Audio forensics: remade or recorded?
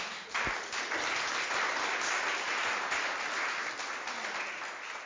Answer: recorded